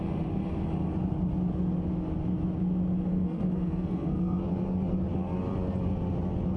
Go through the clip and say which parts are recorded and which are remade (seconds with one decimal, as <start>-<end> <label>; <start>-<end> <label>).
0.0-3.1 recorded; 3.1-4.4 remade; 4.4-6.6 recorded